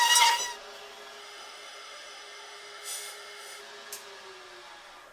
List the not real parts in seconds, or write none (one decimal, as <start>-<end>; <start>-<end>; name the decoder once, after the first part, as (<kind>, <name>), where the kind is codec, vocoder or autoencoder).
1.2-3.6 (autoencoder, DAC-VAE)